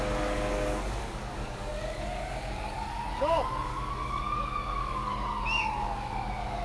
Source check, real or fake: fake